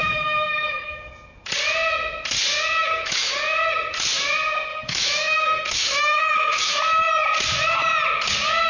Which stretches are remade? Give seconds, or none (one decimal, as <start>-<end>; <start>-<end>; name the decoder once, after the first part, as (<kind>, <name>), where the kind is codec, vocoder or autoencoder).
0.0-1.1 (autoencoder, DAC-VAE); 2.8-3.3; 4.7-6.8